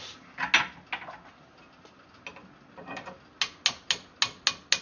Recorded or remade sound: recorded